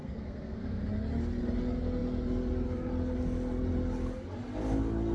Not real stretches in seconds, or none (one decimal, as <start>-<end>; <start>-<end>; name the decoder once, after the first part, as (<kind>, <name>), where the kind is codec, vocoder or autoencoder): 0.0-0.8 (codec, SNAC)